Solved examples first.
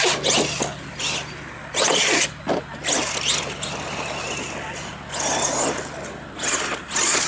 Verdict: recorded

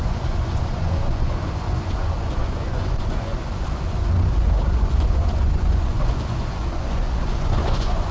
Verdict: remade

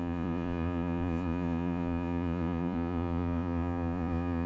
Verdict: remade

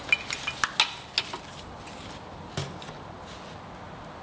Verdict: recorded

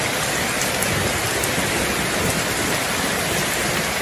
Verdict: recorded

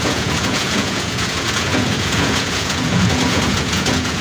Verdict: remade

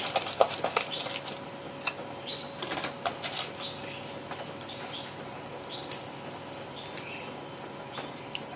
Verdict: recorded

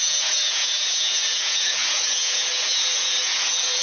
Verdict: remade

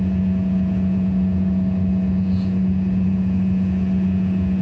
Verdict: remade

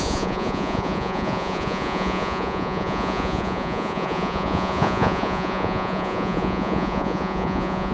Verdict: remade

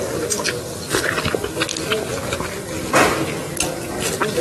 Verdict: recorded